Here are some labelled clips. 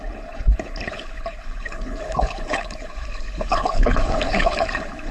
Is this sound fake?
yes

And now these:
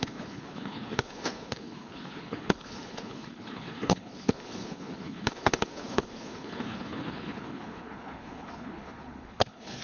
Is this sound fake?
yes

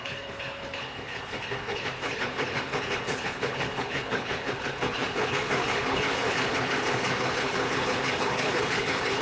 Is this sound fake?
yes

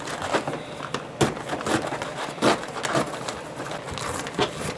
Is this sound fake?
no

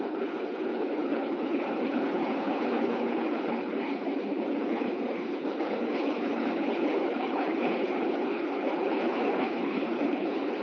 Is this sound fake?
yes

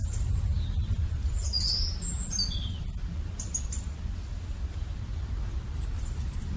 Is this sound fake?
no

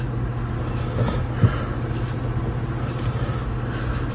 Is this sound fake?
no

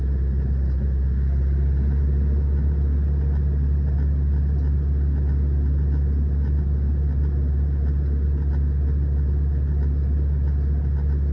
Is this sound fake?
no